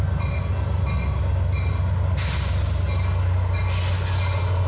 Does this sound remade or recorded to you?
recorded